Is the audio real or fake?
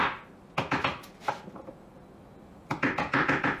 real